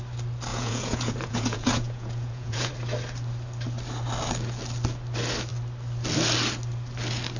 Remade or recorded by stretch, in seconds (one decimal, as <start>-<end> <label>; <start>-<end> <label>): 0.0-0.5 recorded; 0.5-2.7 remade; 2.7-7.4 recorded